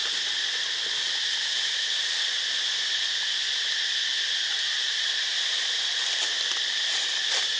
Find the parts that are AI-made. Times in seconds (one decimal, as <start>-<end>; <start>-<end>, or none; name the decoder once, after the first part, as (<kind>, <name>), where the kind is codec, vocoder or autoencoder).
none